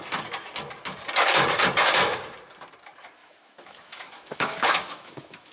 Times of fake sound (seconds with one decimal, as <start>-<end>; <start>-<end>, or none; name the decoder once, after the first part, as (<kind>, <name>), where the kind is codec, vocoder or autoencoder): 3.2-5.5 (autoencoder, DAC-VAE)